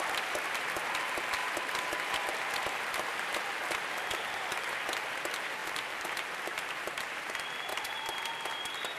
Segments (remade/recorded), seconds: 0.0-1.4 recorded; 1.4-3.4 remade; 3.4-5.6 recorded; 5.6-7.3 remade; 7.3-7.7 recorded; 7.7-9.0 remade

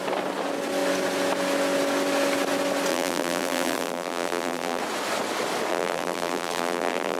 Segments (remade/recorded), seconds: 0.0-2.9 recorded; 2.9-4.8 remade; 4.8-5.7 recorded; 5.7-7.2 remade

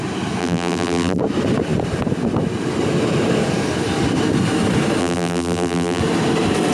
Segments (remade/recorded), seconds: 0.0-0.4 recorded; 0.4-1.2 remade; 1.2-5.0 recorded; 5.0-6.0 remade; 6.0-6.7 recorded

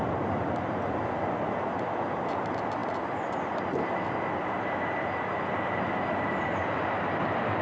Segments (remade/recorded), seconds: 0.0-7.6 recorded

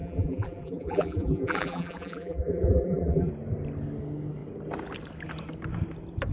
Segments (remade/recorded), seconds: 0.0-3.3 remade; 3.3-6.3 recorded

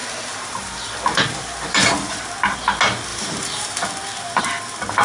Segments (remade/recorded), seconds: 0.0-2.1 remade; 2.1-3.1 recorded; 3.1-4.4 remade; 4.4-5.0 recorded